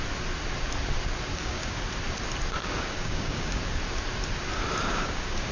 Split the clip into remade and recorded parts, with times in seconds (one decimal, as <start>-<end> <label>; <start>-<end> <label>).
0.0-1.3 recorded; 1.3-1.8 remade; 1.8-2.6 recorded; 2.6-3.8 remade; 3.8-4.9 recorded; 4.9-5.5 remade